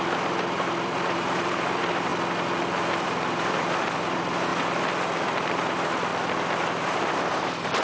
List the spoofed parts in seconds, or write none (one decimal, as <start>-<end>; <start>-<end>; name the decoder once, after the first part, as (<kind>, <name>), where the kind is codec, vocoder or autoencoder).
0.0-2.1 (vocoder, BigVGAN v2); 2.9-4.5; 5.2-6.1; 6.6-7.8